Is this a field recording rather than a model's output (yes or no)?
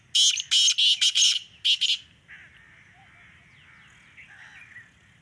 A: yes